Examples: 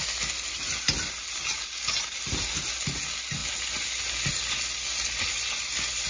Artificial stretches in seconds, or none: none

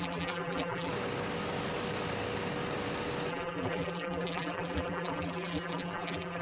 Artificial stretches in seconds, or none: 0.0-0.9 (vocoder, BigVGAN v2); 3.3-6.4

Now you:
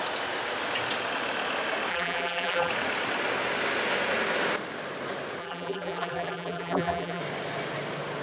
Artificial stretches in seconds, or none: 1.9-2.7 (vocoder, BigVGAN v2); 5.4-7.2